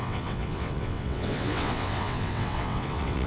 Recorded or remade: remade